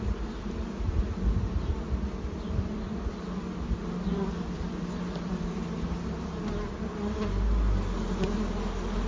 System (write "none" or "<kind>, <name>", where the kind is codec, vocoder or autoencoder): none